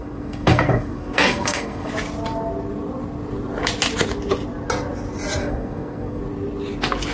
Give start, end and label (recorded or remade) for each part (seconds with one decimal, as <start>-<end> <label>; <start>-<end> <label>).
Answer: 0.0-1.9 remade; 1.9-5.4 recorded; 5.4-6.2 remade; 6.2-7.1 recorded